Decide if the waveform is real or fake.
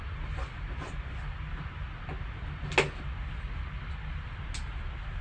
real